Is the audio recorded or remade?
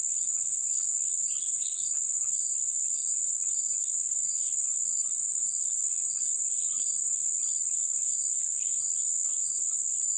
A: remade